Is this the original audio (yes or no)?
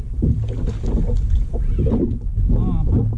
yes